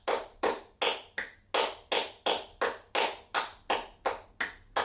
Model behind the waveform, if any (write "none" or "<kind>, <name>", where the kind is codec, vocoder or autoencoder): none